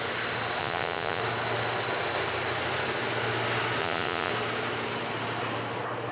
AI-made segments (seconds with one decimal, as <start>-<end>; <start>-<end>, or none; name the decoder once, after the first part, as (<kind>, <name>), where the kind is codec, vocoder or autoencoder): 0.6-1.2 (vocoder, Vocos); 3.8-4.3